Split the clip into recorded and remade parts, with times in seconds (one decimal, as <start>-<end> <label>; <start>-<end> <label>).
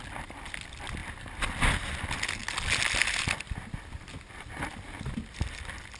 0.0-6.0 recorded